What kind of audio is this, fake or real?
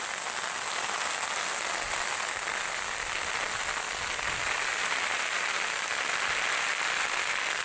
real